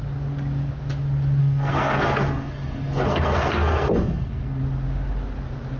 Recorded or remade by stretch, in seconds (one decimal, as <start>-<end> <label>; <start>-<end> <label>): 0.0-1.4 recorded; 1.4-4.6 remade; 4.6-5.8 recorded